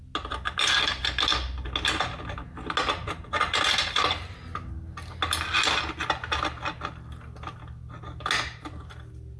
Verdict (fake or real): real